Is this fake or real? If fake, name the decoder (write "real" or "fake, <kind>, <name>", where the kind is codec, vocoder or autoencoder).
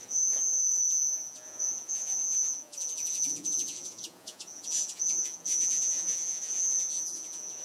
fake, vocoder, Vocos